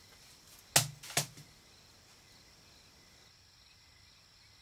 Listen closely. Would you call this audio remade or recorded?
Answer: recorded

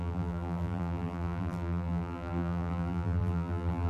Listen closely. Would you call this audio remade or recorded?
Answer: remade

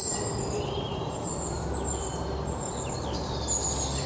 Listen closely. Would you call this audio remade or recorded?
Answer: remade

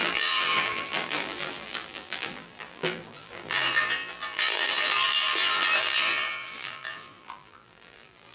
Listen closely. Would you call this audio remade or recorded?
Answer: remade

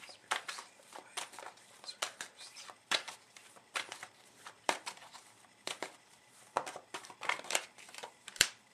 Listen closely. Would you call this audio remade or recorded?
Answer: remade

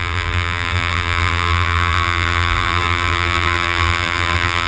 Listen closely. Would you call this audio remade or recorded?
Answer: remade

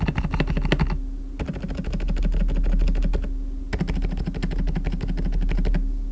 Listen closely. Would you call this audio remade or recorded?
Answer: recorded